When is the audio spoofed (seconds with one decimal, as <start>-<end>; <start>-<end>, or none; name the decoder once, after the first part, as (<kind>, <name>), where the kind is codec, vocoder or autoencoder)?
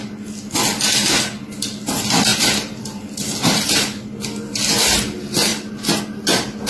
2.3-3.7 (vocoder, BigVGAN v2)